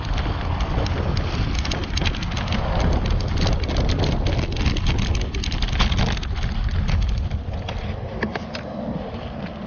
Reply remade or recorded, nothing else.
recorded